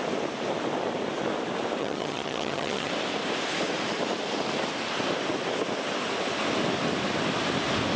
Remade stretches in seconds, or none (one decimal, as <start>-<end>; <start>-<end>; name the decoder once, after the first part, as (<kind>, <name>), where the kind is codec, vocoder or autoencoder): 1.8-2.9 (vocoder, HiFi-GAN)